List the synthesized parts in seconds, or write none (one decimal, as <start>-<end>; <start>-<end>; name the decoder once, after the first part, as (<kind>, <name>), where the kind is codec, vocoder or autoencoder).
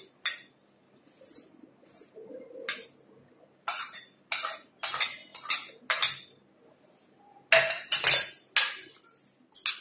none